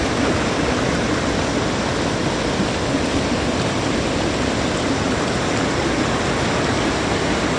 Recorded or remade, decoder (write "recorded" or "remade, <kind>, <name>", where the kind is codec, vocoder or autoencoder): recorded